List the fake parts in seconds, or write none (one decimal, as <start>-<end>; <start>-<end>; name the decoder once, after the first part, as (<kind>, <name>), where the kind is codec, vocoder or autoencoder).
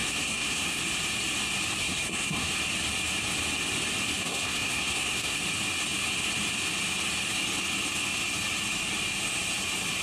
0.0-0.8 (codec, SNAC); 1.8-2.5; 4.2-5.4